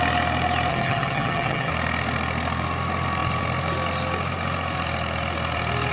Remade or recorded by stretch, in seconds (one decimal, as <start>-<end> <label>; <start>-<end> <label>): 0.0-0.7 recorded; 0.7-1.7 remade; 1.7-5.9 recorded